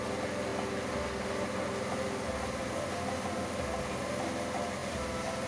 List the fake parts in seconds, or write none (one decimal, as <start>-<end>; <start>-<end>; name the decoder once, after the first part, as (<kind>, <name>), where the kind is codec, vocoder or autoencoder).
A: none